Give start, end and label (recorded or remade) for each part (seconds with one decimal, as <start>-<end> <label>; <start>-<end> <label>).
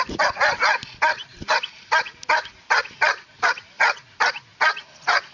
0.0-5.3 recorded